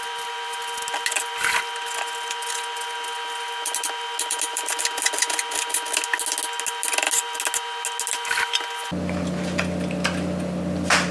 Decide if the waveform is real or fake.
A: real